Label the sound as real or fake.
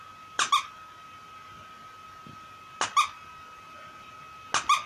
real